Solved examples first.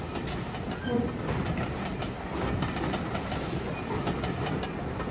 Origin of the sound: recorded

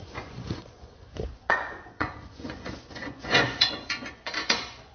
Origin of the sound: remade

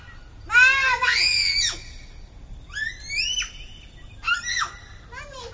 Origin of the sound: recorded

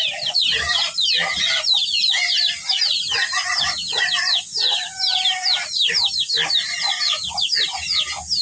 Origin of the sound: recorded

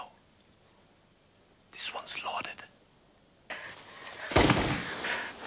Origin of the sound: recorded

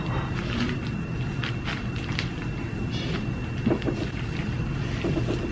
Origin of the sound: recorded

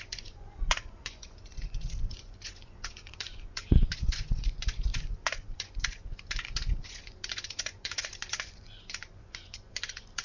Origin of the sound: remade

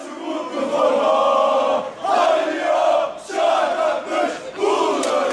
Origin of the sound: recorded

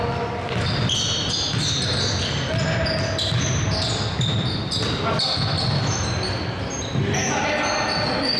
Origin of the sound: recorded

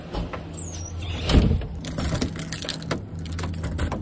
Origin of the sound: recorded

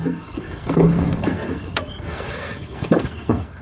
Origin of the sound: remade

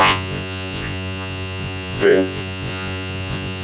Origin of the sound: remade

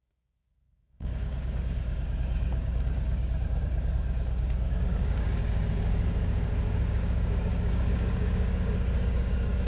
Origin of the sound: remade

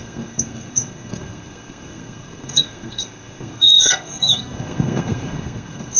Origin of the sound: remade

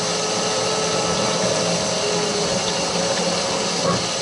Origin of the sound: recorded